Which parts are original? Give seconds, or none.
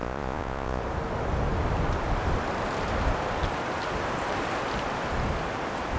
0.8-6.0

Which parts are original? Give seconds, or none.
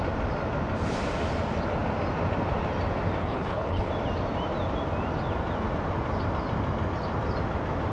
0.0-3.2; 3.9-7.9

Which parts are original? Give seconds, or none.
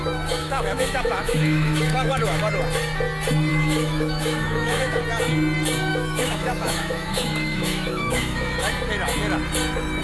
0.0-0.4; 2.4-3.5; 5.0-5.9; 8.7-10.0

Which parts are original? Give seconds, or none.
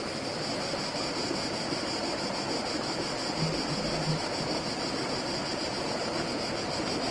0.0-5.4; 6.3-7.1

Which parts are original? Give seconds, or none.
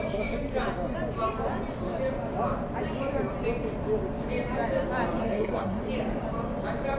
0.0-5.2; 5.8-7.0